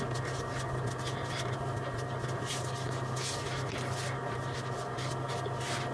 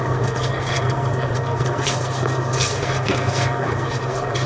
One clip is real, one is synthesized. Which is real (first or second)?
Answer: first